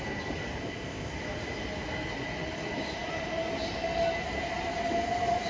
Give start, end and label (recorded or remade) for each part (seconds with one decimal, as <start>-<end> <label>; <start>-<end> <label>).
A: 0.0-0.6 recorded; 0.6-1.1 remade; 1.1-5.5 recorded